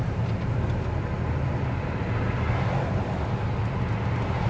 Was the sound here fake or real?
real